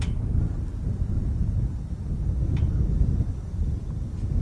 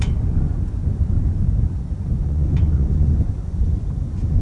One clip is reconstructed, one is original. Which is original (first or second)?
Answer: first